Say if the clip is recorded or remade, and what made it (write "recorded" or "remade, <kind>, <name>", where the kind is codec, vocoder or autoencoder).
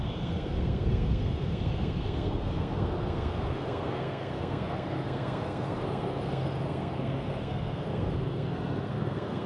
remade, codec, SNAC